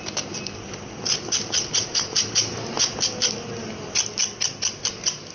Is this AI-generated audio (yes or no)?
no